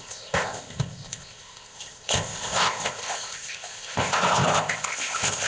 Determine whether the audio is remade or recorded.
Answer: remade